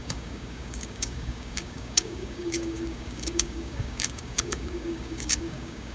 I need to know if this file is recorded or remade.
remade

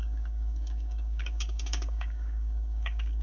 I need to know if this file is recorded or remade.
remade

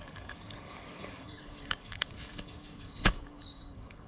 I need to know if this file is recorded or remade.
remade